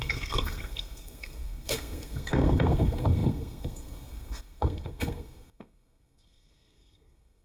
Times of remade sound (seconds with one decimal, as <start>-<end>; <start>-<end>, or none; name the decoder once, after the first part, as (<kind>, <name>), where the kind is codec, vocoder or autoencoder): 0.0-7.4 (codec, SNAC)